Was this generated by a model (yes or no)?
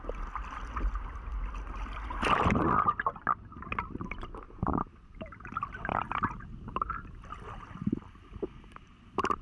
no